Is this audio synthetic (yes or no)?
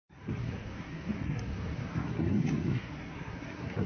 yes